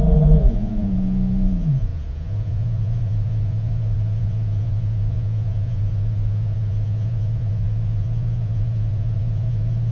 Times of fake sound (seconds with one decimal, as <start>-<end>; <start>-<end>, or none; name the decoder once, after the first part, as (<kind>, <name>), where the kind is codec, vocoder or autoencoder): 0.0-9.9 (vocoder, Vocos)